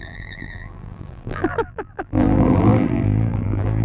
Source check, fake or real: fake